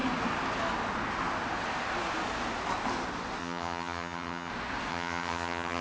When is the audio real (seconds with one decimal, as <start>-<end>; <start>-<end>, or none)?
0.0-3.4; 4.5-4.9

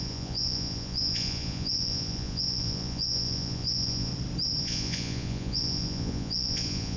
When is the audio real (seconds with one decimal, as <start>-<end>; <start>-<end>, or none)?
4.1-4.6